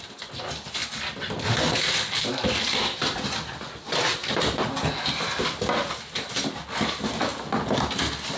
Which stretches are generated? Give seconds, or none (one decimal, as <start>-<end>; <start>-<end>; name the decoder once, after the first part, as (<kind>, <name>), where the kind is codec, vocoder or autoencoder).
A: none